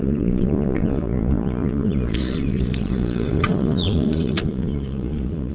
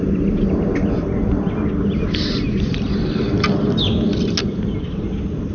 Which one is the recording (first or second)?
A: second